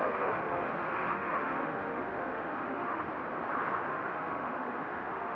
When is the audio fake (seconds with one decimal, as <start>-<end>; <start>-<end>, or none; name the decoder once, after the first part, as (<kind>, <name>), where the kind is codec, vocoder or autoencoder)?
0.0-3.1 (autoencoder, DAC-VAE); 3.9-5.3